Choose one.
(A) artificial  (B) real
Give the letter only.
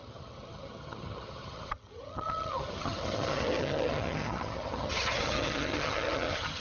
A